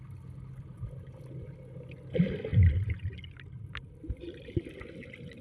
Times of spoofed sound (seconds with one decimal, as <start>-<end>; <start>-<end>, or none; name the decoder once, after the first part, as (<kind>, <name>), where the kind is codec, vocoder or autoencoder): none